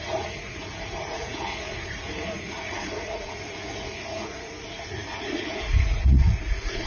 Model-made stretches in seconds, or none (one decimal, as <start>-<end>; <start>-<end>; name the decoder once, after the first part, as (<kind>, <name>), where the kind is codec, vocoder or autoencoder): 0.0-6.9 (vocoder, Vocos)